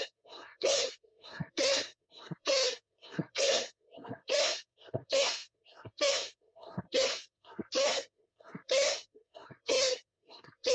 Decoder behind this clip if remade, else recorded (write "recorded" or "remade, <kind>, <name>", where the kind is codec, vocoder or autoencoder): remade, codec, SNAC